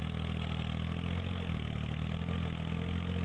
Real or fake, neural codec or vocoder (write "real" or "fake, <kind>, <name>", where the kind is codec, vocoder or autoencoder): real